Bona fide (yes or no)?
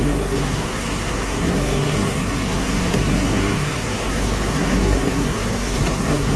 no